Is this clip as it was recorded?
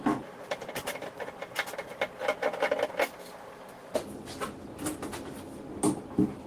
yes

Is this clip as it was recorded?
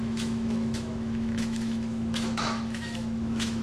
no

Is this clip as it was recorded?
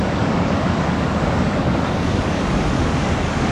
no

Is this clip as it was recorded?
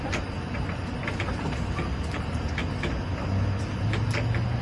yes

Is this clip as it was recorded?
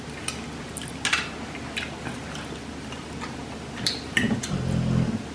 yes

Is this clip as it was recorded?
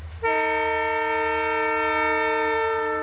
yes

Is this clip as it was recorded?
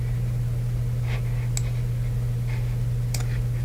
yes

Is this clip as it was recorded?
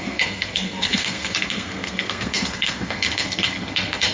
no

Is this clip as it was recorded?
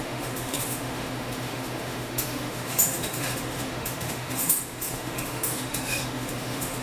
no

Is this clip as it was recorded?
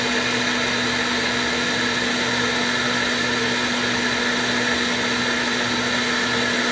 yes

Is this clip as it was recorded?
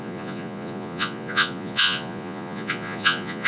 no